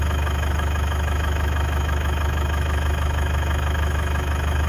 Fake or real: fake